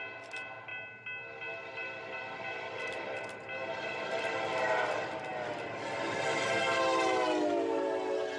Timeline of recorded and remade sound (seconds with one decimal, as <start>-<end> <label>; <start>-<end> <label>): 0.0-8.4 recorded